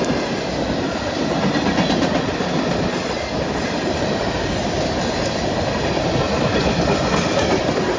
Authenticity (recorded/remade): recorded